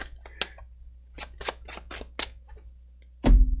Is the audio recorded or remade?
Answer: recorded